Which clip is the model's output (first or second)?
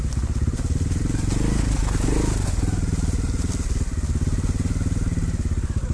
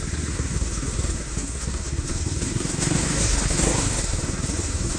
second